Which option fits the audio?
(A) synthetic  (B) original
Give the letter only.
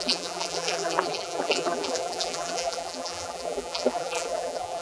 A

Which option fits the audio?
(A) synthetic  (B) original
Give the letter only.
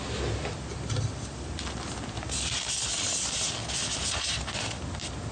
B